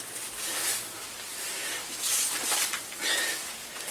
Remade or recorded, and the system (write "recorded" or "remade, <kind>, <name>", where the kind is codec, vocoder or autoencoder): recorded